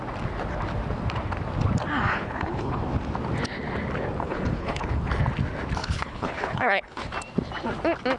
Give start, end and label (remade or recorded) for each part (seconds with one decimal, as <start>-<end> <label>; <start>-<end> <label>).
0.0-2.1 recorded; 2.1-2.8 remade; 2.8-4.2 recorded; 4.2-5.1 remade; 5.1-5.8 recorded; 5.8-7.0 remade; 7.0-8.2 recorded